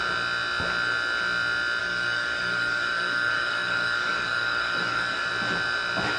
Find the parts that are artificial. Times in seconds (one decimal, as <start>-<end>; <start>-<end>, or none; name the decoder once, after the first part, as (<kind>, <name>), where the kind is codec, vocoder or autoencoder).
1.8-5.3 (codec, DAC)